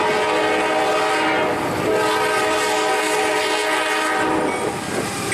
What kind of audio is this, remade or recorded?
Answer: recorded